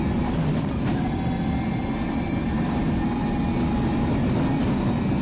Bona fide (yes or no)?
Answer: yes